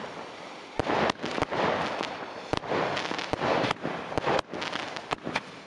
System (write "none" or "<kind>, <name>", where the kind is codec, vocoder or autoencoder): none